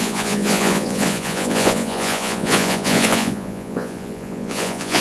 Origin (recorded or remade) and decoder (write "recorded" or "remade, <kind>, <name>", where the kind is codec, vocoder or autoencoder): remade, vocoder, Vocos